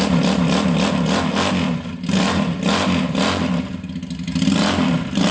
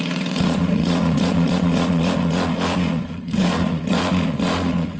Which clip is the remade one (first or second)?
second